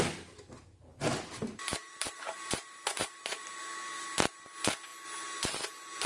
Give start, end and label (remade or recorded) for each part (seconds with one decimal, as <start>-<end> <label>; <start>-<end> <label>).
0.0-0.9 recorded; 0.9-3.5 remade; 3.5-6.1 recorded